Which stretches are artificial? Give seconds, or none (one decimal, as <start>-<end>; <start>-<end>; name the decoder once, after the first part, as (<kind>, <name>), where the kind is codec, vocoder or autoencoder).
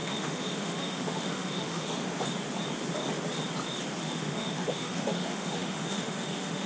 0.0-2.1 (autoencoder, DAC-VAE); 4.0-6.7